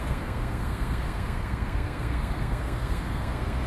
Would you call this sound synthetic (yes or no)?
yes